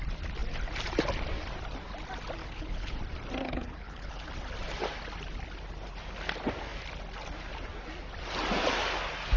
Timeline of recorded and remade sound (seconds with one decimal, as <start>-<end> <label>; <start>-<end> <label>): 0.0-2.4 recorded; 2.4-3.0 remade; 3.0-3.4 recorded; 3.4-4.3 remade; 4.3-9.4 recorded